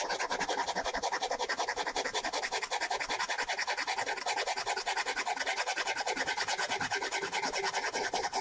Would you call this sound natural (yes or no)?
yes